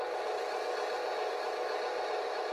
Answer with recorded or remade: recorded